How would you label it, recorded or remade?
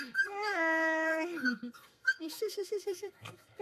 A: remade